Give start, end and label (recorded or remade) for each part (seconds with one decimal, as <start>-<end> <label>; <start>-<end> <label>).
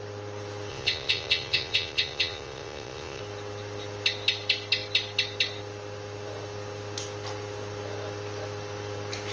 0.0-0.7 recorded; 0.7-3.2 remade; 3.2-9.3 recorded